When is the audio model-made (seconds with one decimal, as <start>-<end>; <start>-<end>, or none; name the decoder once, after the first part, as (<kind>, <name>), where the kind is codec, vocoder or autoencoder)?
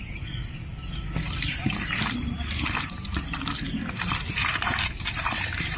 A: 0.0-0.7 (vocoder, BigVGAN v2); 1.2-3.1; 4.1-5.8